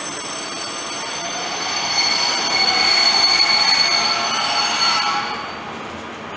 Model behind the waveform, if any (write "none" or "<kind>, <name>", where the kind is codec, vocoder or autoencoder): none